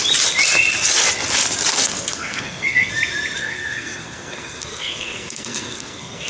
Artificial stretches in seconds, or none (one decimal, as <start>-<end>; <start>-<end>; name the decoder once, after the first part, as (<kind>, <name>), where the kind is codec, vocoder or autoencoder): 1.7-2.9 (codec, SNAC); 3.4-6.3